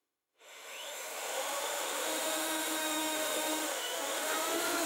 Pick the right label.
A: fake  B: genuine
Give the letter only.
A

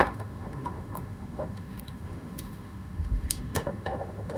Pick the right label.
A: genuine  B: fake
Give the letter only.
B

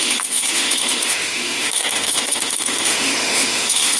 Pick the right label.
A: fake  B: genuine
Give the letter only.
A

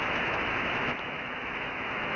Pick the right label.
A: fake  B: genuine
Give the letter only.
A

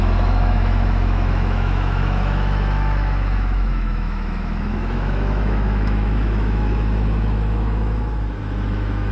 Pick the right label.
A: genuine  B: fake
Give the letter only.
B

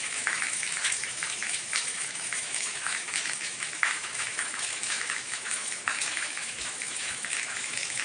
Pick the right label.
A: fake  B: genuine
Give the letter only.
A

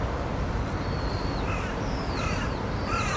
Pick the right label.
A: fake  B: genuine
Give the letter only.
B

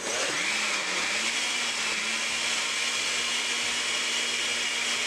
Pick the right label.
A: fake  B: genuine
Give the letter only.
B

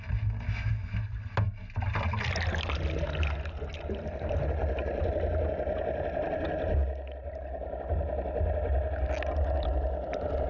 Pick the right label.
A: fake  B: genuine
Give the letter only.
B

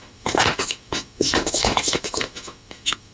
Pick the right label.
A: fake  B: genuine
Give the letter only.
A